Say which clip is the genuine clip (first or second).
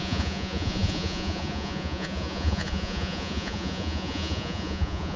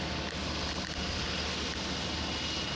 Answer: second